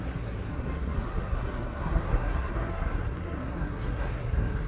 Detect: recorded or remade remade